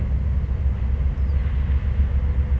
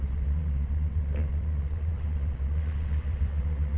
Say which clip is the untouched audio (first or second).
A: first